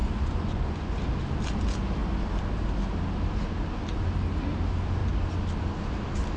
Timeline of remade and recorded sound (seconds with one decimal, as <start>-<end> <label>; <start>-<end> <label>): 0.0-1.0 remade; 1.0-6.4 recorded